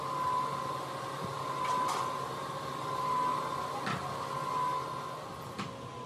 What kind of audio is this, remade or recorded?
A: recorded